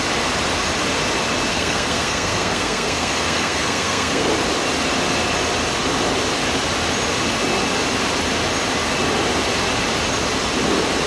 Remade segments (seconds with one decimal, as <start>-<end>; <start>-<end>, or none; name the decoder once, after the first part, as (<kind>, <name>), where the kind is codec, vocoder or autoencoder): 1.5-4.3 (codec, SNAC)